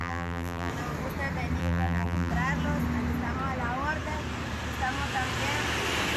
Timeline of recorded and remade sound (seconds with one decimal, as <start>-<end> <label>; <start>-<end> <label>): 0.0-0.7 remade; 0.7-1.6 recorded; 1.6-2.3 remade; 2.3-6.2 recorded